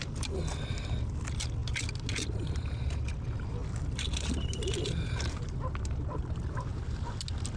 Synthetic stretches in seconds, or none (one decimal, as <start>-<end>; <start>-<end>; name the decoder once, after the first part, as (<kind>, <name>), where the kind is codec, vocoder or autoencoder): none